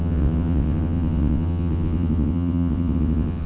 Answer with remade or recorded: remade